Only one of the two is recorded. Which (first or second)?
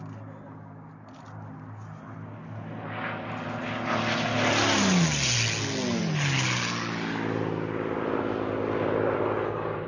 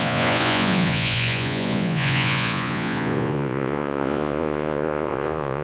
first